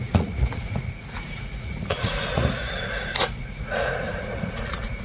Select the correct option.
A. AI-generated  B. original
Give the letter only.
A